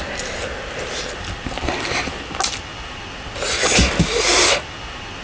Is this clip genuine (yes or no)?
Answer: yes